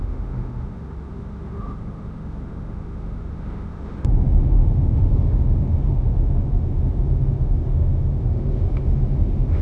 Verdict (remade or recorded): remade